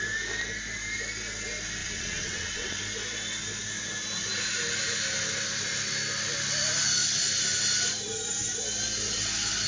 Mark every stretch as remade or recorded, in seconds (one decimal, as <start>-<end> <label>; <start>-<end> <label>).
0.0-1.8 recorded; 1.8-2.8 remade; 2.8-9.7 recorded